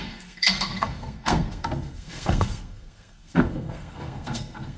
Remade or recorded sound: remade